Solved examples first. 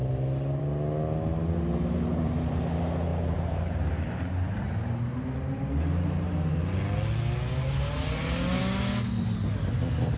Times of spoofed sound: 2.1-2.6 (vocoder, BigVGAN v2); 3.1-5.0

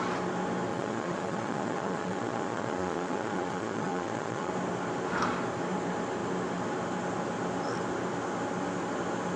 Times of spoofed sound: 0.7-4.5 (vocoder, Vocos)

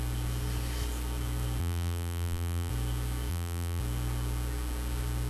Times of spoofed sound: 1.6-2.7 (vocoder, BigVGAN v2); 3.3-3.8

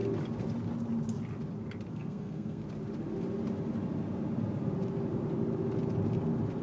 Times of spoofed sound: 1.9-2.6 (codec, SNAC)

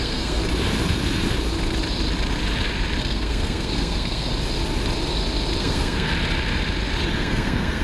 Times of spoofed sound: 0.0-0.4 (codec, SNAC); 3.0-4.3; 5.6-6.1; 7.2-7.8

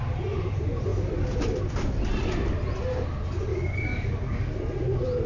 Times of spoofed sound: 3.5-4.5 (codec, DAC)

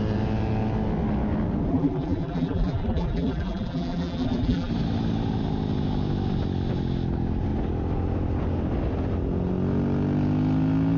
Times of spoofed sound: 1.7-4.7 (vocoder, BigVGAN v2)

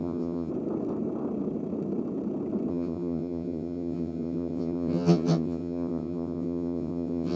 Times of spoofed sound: 0.0-0.5 (vocoder, HiFi-GAN); 2.7-7.4